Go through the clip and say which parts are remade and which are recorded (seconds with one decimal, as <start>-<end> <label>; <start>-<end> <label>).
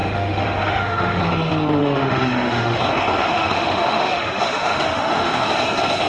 0.0-1.2 remade; 1.2-1.8 recorded; 1.8-2.8 remade; 2.8-3.2 recorded; 3.2-5.5 remade; 5.5-6.1 recorded